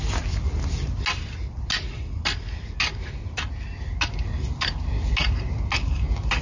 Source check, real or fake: real